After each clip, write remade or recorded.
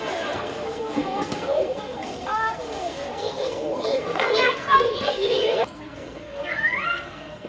remade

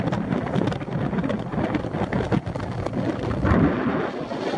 recorded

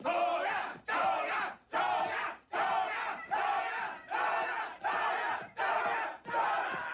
recorded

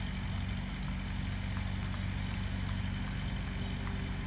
recorded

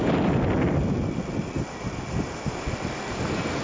recorded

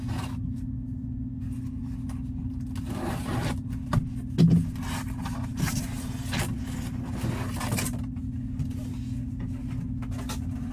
recorded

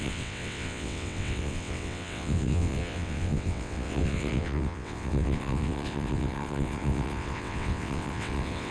remade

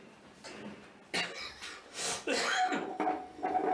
recorded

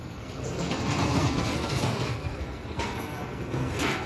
remade